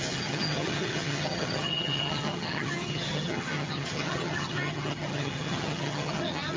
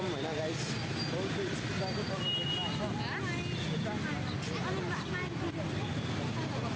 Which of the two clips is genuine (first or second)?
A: second